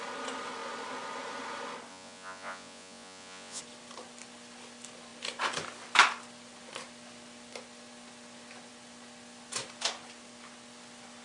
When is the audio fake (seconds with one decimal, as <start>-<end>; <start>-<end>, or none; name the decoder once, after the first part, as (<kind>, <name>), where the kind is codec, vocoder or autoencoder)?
1.9-3.6 (vocoder, Vocos)